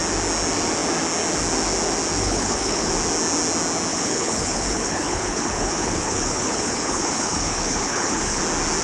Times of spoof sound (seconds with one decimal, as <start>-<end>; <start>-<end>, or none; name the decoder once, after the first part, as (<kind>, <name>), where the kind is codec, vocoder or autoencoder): 2.2-2.9 (codec, HILCodec); 3.9-8.4